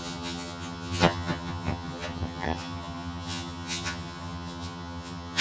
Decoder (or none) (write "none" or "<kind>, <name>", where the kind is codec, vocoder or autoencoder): vocoder, HiFi-GAN